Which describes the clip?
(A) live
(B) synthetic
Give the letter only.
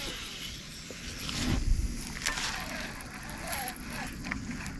A